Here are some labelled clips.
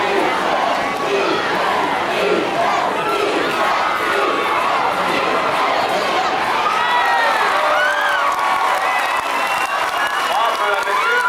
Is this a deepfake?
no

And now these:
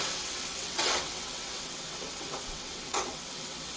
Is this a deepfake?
yes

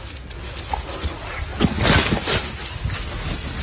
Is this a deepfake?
no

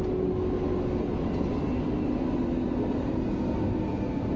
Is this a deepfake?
no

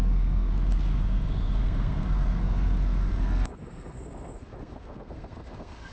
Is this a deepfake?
yes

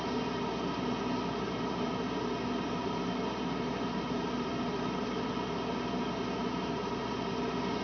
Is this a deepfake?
no